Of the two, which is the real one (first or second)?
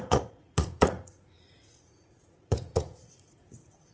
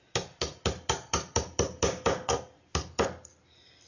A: second